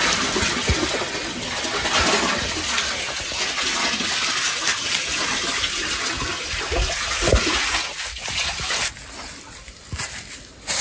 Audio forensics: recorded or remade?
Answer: recorded